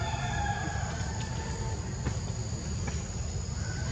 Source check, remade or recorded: recorded